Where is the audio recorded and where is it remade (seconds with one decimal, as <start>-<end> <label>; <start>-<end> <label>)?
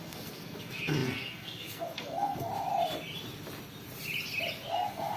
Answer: 0.0-2.5 remade; 2.5-4.7 recorded; 4.7-5.2 remade